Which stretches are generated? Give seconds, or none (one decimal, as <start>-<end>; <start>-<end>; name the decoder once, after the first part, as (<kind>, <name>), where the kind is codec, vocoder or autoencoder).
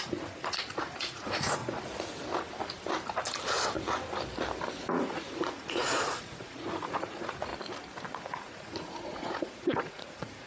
0.0-1.6 (vocoder, Vocos); 4.9-7.5; 8.2-10.5